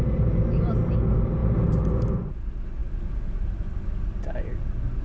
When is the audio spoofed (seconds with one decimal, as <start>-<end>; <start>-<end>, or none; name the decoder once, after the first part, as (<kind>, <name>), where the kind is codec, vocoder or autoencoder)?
2.8-4.6 (vocoder, BigVGAN v2)